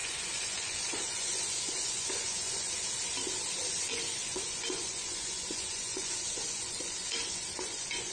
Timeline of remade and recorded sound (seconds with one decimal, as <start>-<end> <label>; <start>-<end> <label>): 0.0-2.7 remade; 2.7-3.6 recorded; 3.6-8.1 remade